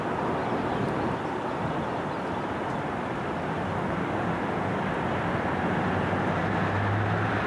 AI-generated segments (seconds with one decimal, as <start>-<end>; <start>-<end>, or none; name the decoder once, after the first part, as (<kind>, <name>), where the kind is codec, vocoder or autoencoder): none